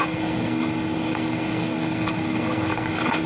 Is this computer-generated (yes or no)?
yes